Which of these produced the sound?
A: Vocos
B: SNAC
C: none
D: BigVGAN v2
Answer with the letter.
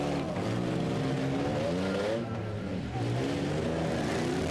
C